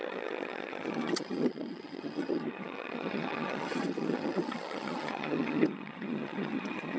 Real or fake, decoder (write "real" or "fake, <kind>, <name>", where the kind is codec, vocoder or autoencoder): fake, vocoder, HiFi-GAN